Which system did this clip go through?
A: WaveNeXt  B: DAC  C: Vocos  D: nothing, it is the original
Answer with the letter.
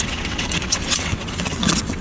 A